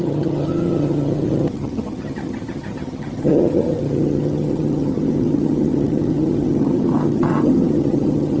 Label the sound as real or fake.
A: fake